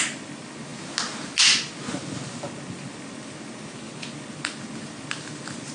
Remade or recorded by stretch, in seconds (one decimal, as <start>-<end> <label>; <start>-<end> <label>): 0.0-5.7 recorded